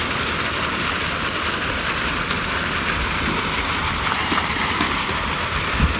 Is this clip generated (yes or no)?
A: yes